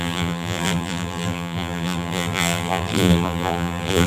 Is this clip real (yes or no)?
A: no